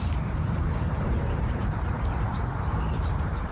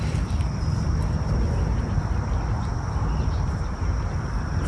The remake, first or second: first